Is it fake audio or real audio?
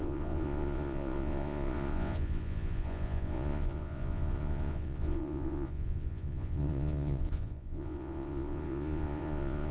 fake